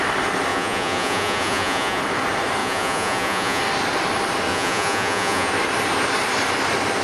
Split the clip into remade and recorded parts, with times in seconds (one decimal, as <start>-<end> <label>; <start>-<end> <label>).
0.0-0.5 recorded; 0.5-2.0 remade; 2.0-2.6 recorded; 2.6-3.6 remade; 3.6-4.5 recorded; 4.5-5.5 remade; 5.5-7.0 recorded